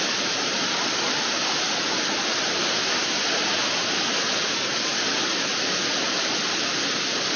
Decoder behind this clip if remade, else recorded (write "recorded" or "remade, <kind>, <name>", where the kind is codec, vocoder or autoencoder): recorded